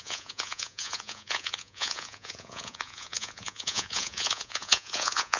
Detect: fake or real fake